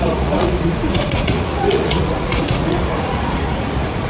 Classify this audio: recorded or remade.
remade